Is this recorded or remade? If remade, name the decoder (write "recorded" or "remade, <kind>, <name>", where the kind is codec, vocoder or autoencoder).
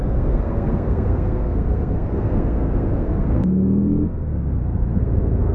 remade, codec, SNAC